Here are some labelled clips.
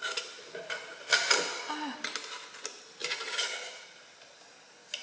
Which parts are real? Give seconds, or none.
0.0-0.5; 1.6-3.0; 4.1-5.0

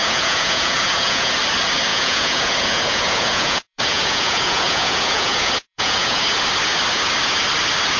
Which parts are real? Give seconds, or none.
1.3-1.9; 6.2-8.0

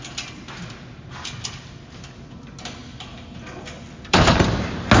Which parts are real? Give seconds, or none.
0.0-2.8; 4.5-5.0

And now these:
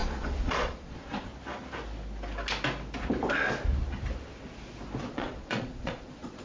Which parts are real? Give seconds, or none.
1.3-5.1